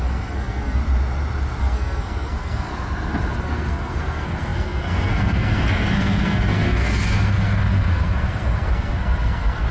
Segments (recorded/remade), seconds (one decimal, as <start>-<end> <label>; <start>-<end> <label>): 0.0-0.8 remade; 0.8-1.6 recorded; 1.6-2.7 remade; 2.7-3.4 recorded; 3.4-9.7 remade